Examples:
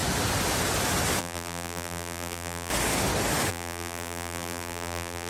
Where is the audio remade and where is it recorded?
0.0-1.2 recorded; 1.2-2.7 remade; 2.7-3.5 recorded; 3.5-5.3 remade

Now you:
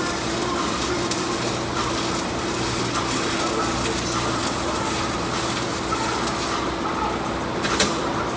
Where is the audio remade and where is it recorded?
0.0-4.4 recorded; 4.4-5.3 remade; 5.3-8.4 recorded

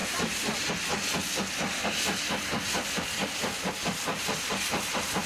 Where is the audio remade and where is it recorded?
0.0-0.7 remade; 0.7-4.7 recorded; 4.7-5.3 remade